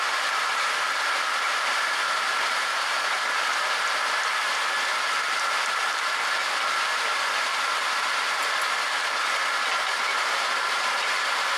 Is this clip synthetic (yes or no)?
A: no